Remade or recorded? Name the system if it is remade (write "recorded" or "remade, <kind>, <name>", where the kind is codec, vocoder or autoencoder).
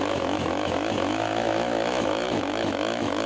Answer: remade, autoencoder, DAC-VAE